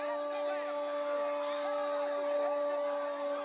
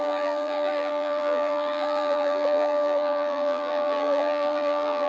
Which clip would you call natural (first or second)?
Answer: first